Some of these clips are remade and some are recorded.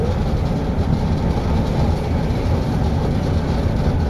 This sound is recorded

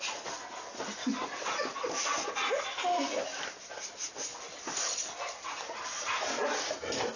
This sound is recorded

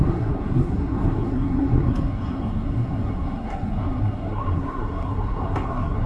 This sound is remade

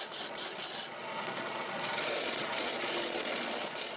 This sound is remade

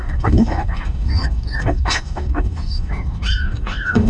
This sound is remade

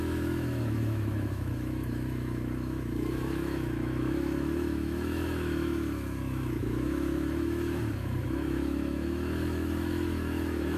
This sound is remade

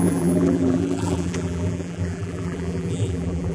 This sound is remade